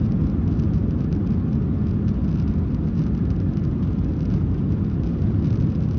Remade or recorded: recorded